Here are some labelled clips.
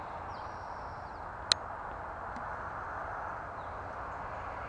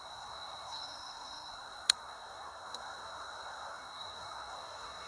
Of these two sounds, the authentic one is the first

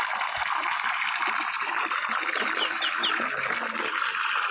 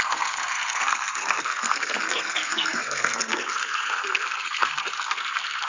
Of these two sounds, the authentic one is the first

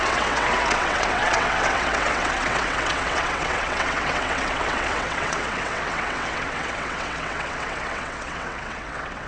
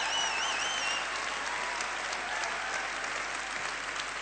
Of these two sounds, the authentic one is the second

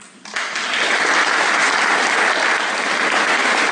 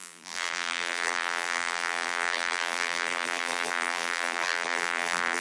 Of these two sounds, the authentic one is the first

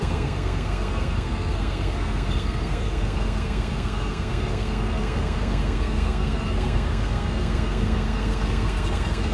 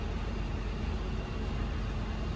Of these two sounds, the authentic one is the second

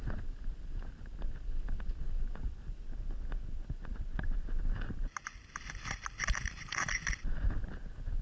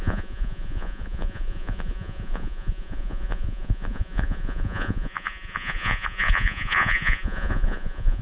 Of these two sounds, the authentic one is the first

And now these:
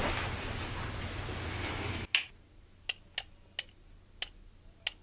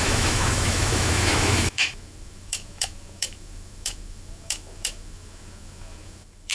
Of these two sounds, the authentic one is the first